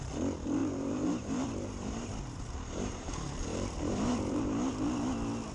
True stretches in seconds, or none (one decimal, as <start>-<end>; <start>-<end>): 0.0-0.6; 3.1-3.5; 4.4-5.5